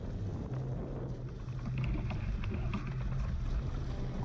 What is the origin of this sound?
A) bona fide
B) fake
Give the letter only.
A